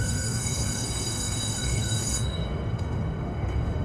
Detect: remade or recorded remade